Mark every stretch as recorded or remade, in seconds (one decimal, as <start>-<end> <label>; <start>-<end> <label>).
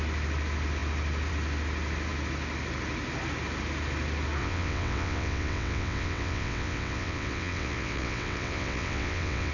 0.0-4.4 recorded; 4.4-9.5 remade